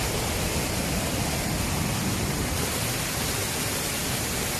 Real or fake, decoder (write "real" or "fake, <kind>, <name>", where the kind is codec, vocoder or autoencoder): real